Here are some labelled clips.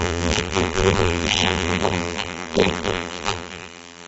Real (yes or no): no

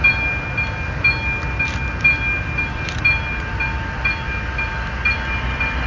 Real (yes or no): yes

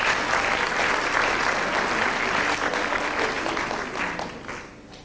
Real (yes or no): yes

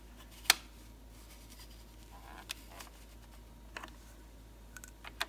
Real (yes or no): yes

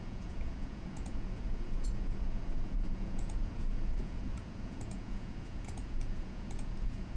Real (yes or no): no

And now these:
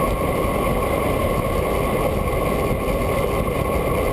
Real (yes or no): yes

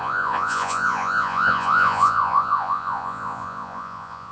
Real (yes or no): no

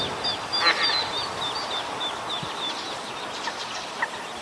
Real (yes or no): yes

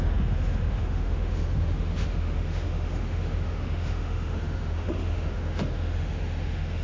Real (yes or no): no